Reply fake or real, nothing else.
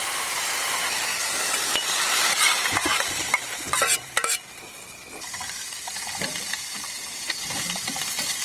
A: fake